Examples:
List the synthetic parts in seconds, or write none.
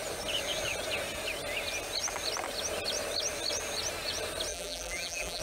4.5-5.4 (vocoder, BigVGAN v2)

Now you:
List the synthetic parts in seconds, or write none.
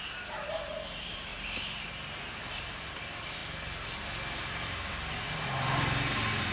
1.3-2.7 (vocoder, BigVGAN v2)